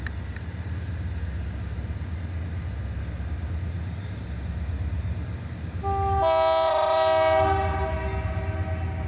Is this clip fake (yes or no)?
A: no